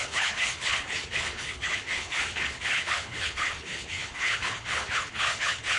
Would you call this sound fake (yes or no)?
yes